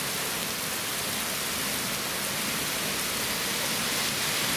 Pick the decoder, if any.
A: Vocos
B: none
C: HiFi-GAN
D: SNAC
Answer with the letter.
B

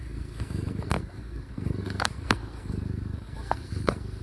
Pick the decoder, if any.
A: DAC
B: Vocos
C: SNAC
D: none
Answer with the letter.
C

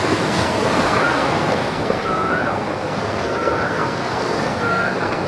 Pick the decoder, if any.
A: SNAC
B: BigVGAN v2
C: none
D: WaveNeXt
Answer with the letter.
A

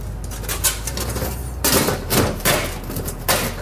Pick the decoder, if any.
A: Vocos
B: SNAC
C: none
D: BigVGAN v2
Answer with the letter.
C